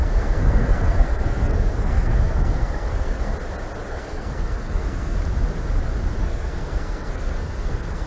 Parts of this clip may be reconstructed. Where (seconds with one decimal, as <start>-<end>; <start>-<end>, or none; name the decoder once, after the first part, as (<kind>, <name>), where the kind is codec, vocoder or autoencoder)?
0.0-3.3 (codec, SNAC); 3.9-5.2; 6.2-8.1

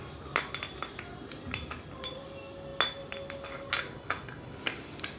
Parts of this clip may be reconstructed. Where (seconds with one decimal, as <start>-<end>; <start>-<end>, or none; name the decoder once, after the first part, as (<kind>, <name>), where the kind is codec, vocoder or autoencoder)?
none

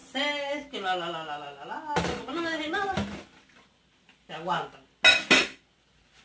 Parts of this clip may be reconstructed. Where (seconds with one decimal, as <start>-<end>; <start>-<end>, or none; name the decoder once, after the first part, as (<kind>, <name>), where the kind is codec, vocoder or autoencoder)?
none

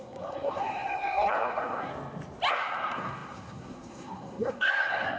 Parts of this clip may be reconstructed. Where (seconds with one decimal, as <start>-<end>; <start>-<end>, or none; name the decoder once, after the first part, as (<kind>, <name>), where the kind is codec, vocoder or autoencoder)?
0.0-1.9 (codec, SNAC); 2.5-5.2

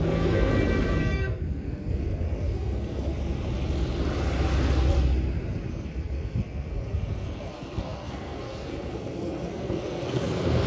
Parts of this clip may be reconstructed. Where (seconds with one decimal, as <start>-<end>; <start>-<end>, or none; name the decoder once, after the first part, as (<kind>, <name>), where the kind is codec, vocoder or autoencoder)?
0.0-0.5 (codec, SNAC); 1.0-3.1; 5.7-10.7

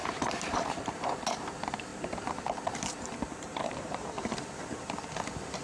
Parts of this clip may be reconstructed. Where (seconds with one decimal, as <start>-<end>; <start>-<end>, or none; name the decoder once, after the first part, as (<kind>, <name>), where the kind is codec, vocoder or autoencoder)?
0.0-1.1 (vocoder, BigVGAN v2); 1.9-5.1

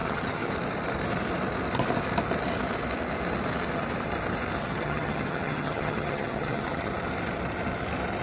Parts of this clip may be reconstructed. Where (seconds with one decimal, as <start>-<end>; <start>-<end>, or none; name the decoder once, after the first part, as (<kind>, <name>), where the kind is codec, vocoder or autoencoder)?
0.0-0.5 (vocoder, HiFi-GAN); 4.6-6.9

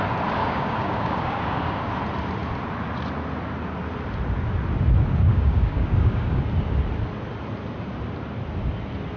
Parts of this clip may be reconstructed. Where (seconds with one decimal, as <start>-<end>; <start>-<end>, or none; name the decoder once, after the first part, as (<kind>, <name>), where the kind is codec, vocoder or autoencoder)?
0.4-1.9 (codec, DAC); 5.2-6.4